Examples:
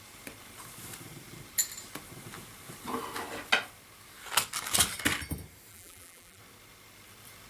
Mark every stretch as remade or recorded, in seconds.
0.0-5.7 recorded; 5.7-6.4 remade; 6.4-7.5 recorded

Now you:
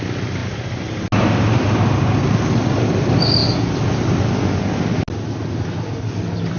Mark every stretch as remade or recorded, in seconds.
0.0-0.4 remade; 0.4-2.9 recorded; 2.9-3.4 remade; 3.4-5.3 recorded; 5.3-6.6 remade

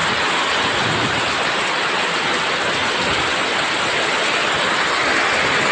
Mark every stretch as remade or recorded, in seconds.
0.0-5.7 recorded

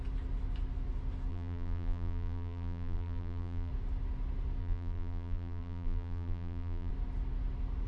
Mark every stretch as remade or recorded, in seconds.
0.0-1.3 recorded; 1.3-3.7 remade; 3.7-4.6 recorded; 4.6-6.9 remade; 6.9-7.9 recorded